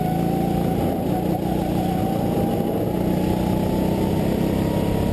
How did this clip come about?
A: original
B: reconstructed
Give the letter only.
A